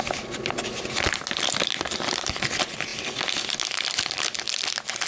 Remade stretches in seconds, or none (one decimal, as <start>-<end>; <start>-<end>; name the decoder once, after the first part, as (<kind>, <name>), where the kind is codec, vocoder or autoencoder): none